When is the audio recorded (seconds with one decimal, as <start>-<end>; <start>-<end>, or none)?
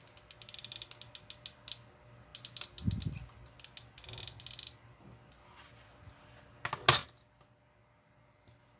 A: 0.0-8.8